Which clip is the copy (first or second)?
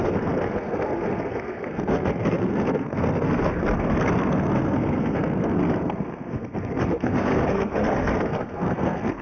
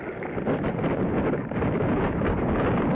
first